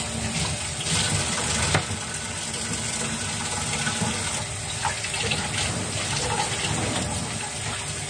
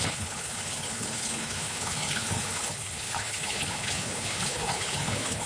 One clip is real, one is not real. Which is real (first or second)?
first